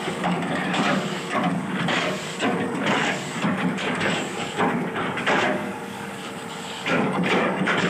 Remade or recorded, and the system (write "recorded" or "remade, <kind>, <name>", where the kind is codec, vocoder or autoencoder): remade, codec, DAC